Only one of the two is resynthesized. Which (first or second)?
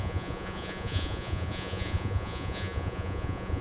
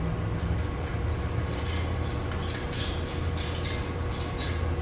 first